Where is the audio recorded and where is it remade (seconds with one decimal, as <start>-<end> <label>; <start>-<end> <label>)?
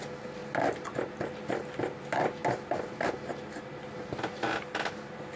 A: 0.0-5.4 recorded